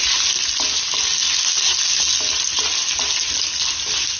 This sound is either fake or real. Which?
real